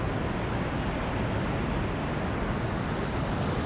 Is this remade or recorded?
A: recorded